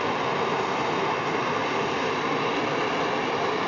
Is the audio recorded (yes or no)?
yes